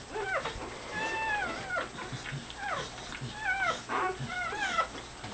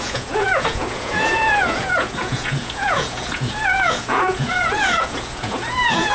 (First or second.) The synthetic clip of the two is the second